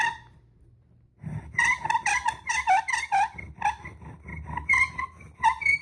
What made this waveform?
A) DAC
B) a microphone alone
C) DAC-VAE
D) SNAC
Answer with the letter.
B